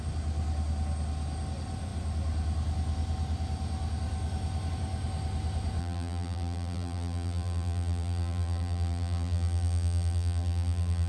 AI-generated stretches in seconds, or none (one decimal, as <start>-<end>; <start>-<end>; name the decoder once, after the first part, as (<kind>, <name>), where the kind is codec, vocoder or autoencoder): 5.8-11.1 (vocoder, BigVGAN v2)